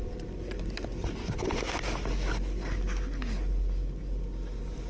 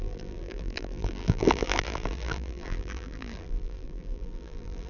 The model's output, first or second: second